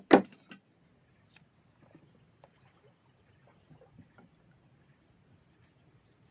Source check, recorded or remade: recorded